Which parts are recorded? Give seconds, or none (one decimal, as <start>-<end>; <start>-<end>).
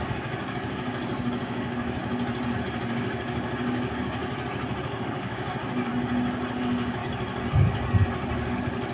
2.0-2.8; 4.2-4.8; 5.9-6.6; 7.0-8.5